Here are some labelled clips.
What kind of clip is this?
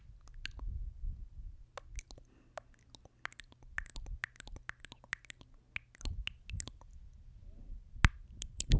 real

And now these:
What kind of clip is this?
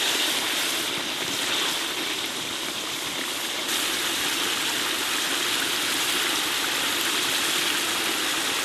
real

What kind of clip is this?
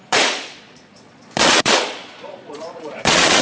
fake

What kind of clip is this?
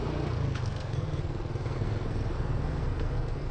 fake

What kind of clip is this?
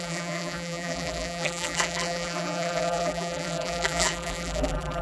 fake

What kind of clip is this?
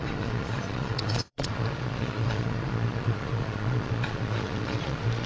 fake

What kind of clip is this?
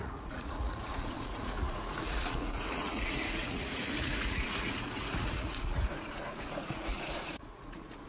fake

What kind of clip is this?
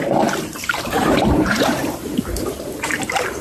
fake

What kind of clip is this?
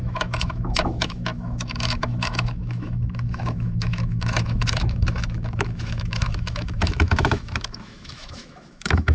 fake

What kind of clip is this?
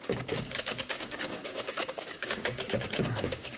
fake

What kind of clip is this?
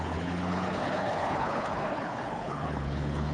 fake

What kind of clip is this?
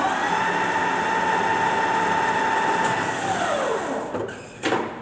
real